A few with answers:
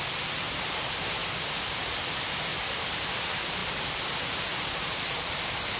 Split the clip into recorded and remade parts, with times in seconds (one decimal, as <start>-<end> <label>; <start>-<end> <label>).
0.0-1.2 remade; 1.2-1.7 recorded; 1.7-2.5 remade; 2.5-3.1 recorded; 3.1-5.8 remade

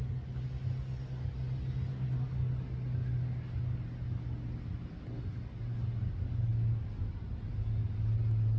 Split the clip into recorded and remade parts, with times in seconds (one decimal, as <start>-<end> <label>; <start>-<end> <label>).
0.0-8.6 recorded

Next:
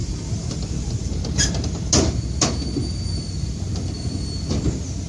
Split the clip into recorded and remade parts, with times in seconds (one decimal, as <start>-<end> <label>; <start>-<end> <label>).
0.0-1.9 remade; 1.9-5.1 recorded